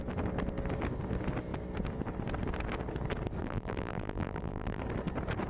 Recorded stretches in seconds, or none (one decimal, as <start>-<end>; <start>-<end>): 0.0-3.4; 4.8-5.5